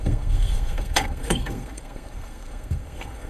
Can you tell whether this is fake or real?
fake